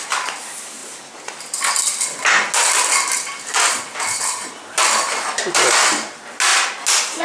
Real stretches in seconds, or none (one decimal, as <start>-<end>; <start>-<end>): 0.0-7.2